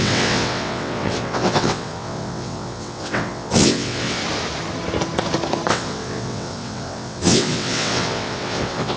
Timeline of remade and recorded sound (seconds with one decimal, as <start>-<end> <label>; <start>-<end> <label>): 0.0-4.2 remade; 4.2-5.7 recorded; 5.7-9.0 remade